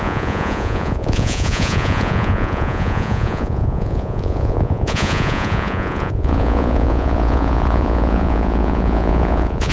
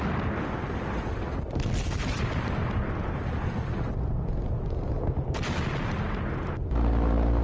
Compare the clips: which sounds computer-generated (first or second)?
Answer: first